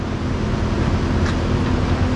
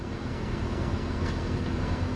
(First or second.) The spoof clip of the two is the second